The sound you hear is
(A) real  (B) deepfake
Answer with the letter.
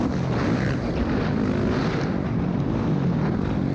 A